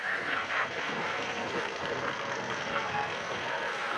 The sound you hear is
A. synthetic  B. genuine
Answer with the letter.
A